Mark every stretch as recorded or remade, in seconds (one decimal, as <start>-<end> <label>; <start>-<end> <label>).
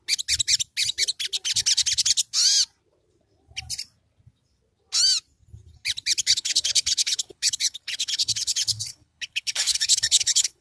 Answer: 0.0-6.2 recorded; 6.2-10.6 remade